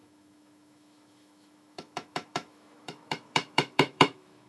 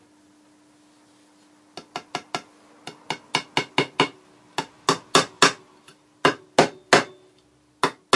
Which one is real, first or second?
second